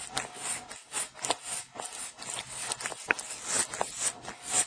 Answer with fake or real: real